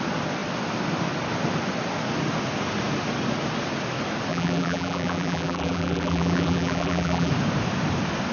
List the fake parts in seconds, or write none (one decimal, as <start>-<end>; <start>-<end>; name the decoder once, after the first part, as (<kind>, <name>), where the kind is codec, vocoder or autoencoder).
4.3-7.3 (vocoder, BigVGAN v2)